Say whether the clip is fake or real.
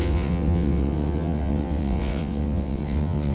fake